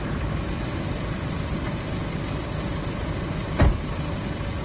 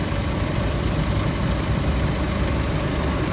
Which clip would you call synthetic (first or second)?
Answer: second